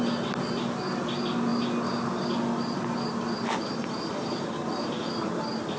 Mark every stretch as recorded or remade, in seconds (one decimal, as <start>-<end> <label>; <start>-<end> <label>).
0.0-5.8 recorded